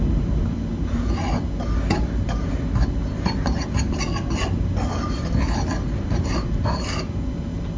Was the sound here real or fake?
real